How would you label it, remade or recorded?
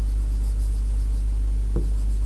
recorded